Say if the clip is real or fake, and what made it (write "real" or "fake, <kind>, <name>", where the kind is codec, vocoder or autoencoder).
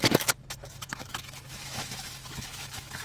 fake, autoencoder, DAC-VAE